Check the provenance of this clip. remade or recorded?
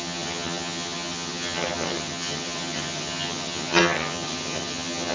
remade